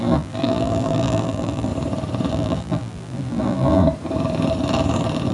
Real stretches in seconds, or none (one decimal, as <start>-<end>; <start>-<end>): 1.7-2.3; 3.8-5.3